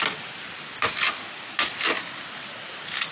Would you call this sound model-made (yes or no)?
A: no